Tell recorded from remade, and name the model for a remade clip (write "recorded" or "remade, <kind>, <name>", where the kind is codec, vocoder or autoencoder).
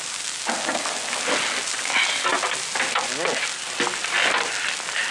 recorded